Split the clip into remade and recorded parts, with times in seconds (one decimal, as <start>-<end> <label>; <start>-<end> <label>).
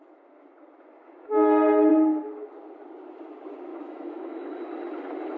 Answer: 0.0-3.7 recorded; 3.7-4.6 remade; 4.6-5.4 recorded